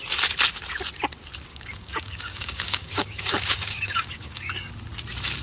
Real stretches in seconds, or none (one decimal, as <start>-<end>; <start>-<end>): 0.0-1.5; 4.7-5.4